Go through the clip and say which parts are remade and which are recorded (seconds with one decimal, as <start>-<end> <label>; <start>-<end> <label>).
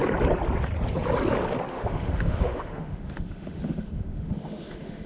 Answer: 0.0-1.7 recorded; 1.7-5.1 remade